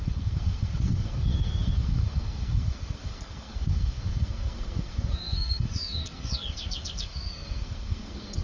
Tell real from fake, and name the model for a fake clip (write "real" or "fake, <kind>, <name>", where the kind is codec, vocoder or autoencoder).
fake, codec, SNAC